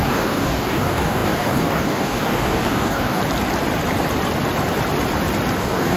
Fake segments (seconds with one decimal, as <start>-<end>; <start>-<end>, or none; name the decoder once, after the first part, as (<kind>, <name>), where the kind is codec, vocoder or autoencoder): 0.0-3.2 (codec, DAC); 5.6-6.0